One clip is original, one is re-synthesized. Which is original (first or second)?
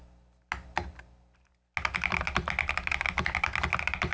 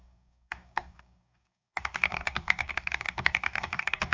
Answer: first